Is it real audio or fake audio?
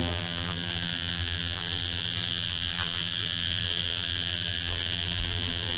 fake